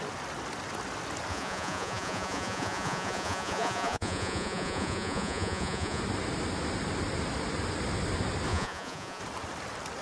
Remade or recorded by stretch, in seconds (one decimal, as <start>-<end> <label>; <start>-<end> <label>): 0.0-1.3 recorded; 1.3-6.0 remade; 6.0-8.5 recorded; 8.5-9.2 remade; 9.2-10.0 recorded